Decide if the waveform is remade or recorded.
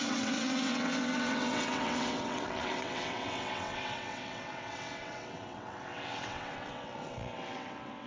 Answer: remade